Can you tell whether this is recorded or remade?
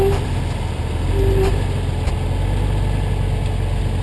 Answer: recorded